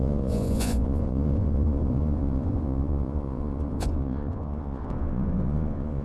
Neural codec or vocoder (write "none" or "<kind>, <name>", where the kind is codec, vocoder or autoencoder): vocoder, Vocos